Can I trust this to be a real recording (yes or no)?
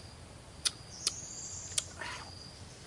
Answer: yes